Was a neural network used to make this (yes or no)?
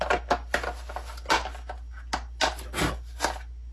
no